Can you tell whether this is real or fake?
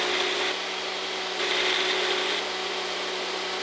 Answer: real